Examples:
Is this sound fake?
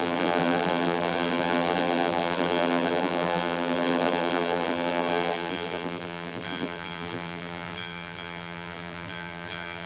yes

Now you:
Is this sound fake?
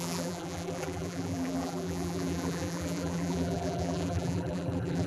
yes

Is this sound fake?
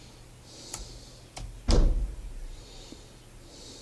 no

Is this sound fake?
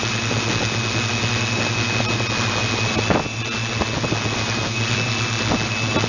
no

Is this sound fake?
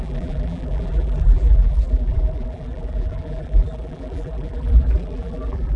yes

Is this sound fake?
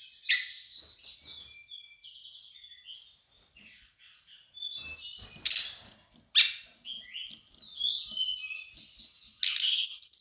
no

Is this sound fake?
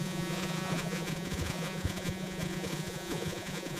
yes